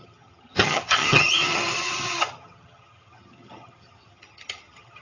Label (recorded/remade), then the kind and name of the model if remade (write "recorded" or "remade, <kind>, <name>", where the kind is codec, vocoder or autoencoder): remade, vocoder, HiFi-GAN